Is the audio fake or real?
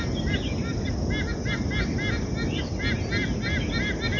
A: real